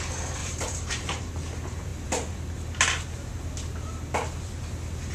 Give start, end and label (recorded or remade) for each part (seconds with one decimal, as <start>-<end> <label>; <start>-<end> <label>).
0.0-0.4 recorded; 0.4-1.3 remade; 1.3-5.1 recorded